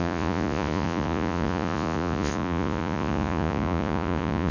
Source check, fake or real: fake